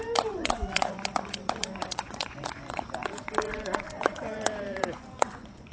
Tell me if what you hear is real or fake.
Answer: fake